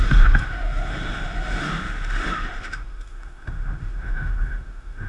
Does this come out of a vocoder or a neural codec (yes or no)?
yes